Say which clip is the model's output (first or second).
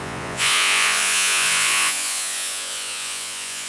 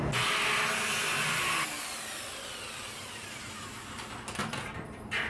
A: first